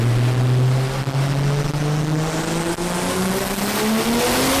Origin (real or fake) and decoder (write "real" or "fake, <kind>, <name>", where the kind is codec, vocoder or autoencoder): real